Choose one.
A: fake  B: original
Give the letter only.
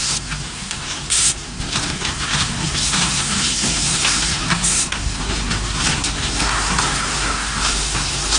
A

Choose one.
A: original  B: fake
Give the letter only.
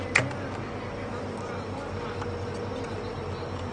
A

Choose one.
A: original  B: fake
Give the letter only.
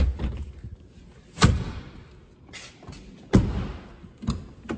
A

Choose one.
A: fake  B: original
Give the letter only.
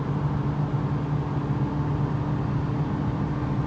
B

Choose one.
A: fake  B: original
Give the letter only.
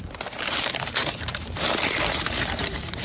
A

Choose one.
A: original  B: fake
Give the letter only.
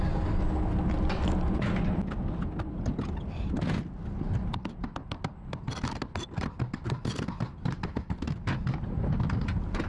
A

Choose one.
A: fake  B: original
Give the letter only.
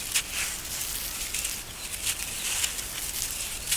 B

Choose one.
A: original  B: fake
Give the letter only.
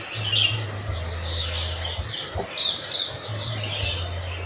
A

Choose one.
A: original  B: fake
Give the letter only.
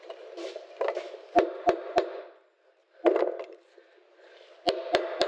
A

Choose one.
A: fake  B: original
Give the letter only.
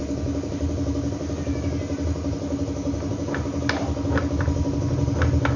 B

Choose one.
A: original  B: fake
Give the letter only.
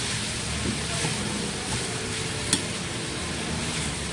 A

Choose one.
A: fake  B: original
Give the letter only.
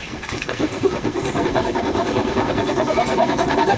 A